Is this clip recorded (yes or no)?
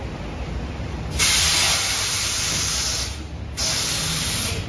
yes